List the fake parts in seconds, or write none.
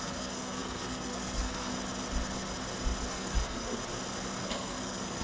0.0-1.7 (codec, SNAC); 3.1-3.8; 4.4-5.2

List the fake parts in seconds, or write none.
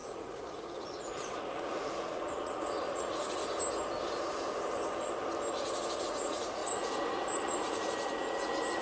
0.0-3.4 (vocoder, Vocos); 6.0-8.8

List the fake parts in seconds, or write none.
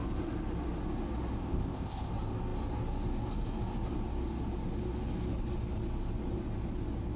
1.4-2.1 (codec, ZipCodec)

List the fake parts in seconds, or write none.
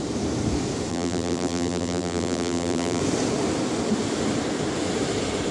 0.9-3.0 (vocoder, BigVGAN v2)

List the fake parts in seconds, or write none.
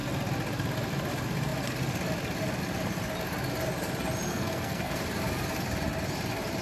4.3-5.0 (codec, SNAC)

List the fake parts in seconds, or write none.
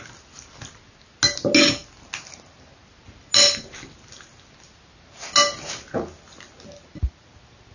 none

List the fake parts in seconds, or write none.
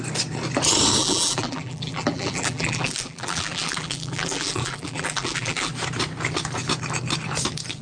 1.0-5.7 (vocoder, BigVGAN v2)